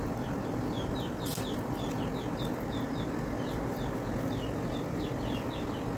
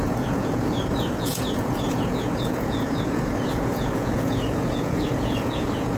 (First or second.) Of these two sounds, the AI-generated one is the second